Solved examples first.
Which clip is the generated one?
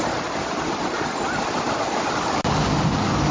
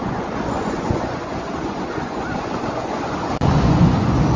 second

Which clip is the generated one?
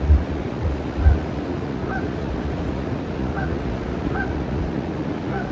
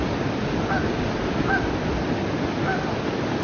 first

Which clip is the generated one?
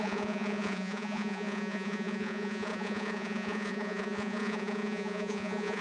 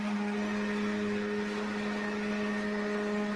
first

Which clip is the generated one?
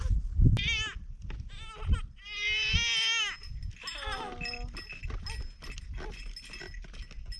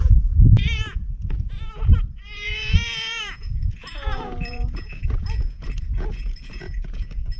second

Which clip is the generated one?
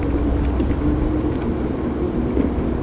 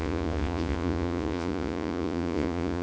second